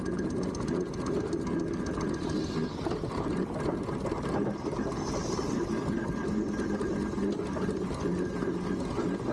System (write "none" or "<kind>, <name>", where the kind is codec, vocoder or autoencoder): none